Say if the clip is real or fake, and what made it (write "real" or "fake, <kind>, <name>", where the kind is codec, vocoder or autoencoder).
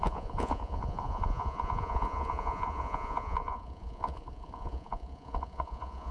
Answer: fake, vocoder, Vocos